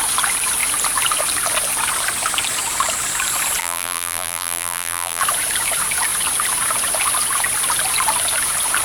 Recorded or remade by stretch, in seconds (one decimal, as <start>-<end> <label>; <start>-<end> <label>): 0.0-3.6 recorded; 3.6-5.2 remade; 5.2-8.8 recorded